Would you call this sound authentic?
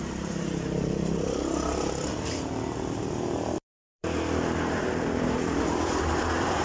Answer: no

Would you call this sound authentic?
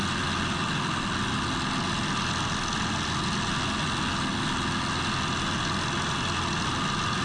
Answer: yes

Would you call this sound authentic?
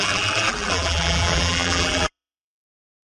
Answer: no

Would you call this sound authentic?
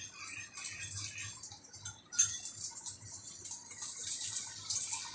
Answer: yes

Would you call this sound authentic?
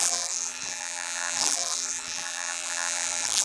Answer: no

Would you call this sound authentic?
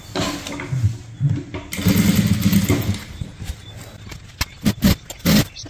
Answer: yes